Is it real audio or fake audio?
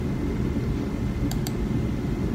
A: real